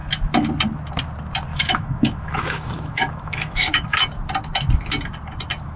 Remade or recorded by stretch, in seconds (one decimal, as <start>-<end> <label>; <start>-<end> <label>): 0.0-1.5 recorded; 1.5-4.0 remade; 4.0-5.8 recorded